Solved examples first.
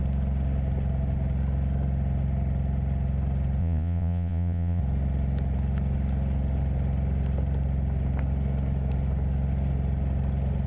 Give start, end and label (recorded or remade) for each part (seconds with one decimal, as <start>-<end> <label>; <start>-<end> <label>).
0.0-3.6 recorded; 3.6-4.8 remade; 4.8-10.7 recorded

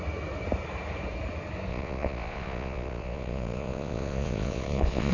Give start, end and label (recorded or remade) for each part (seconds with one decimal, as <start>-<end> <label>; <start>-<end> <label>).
0.0-1.7 recorded; 1.7-5.1 remade

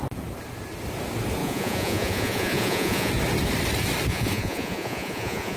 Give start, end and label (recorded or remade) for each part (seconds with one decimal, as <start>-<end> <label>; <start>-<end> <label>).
0.0-1.4 recorded; 1.4-3.1 remade; 3.1-4.1 recorded; 4.1-5.6 remade

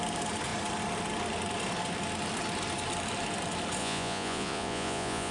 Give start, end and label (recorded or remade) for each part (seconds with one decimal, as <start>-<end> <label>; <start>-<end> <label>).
0.0-3.8 recorded; 3.8-5.3 remade

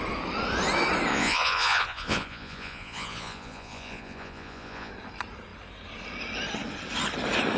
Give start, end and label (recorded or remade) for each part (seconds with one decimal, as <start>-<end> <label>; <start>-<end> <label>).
0.0-1.1 recorded; 1.1-4.9 remade; 4.9-7.6 recorded

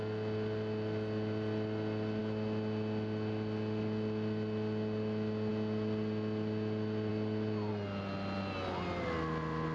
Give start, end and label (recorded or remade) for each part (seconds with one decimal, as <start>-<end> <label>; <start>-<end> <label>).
0.0-9.7 recorded